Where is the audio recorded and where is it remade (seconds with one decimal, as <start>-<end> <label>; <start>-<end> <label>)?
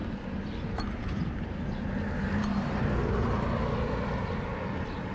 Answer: 0.0-3.1 recorded; 3.1-5.1 remade